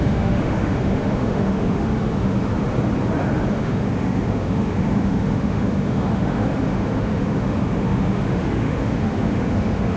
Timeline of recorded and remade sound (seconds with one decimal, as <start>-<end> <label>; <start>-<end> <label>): 0.0-2.5 remade; 2.5-3.5 recorded; 3.5-10.0 remade